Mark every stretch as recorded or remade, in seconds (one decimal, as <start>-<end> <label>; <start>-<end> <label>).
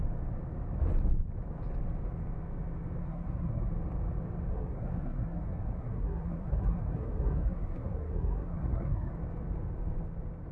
0.0-3.0 recorded; 3.0-3.7 remade; 3.7-4.5 recorded; 4.5-9.1 remade; 9.1-10.5 recorded